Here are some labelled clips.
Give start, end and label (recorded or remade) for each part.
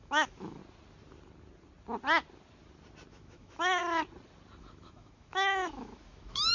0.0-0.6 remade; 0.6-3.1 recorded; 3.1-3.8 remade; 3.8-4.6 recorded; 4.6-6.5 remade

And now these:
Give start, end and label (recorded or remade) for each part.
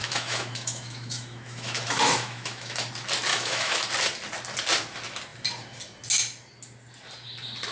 0.0-2.9 remade; 2.9-3.3 recorded; 3.3-3.9 remade; 3.9-7.7 recorded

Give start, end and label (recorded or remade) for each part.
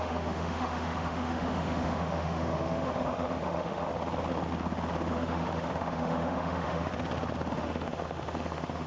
0.0-3.9 remade; 3.9-5.1 recorded; 5.1-6.9 remade; 6.9-7.5 recorded; 7.5-8.9 remade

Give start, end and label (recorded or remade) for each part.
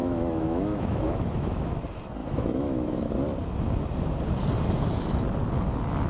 0.0-1.6 remade; 1.6-2.2 recorded; 2.2-3.1 remade; 3.1-6.1 recorded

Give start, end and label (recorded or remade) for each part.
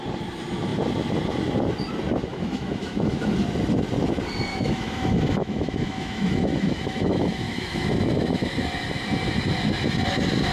0.0-2.3 recorded; 2.3-3.3 remade; 3.3-4.5 recorded; 4.5-8.5 remade; 8.5-10.5 recorded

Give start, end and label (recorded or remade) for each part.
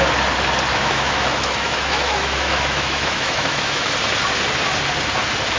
0.0-0.7 recorded; 0.7-3.9 remade; 3.9-5.6 recorded